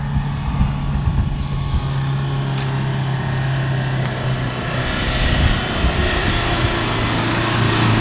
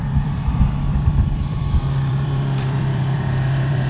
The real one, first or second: first